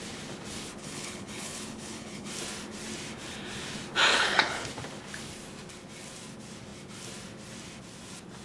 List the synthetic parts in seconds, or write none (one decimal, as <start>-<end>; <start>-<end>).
0.8-2.3; 4.1-4.7